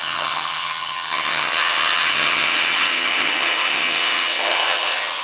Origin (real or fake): fake